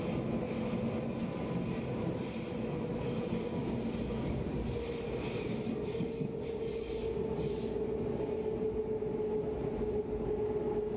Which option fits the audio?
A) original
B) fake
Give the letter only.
A